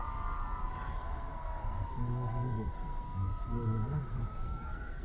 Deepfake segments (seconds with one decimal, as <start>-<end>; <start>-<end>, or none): 0.9-5.0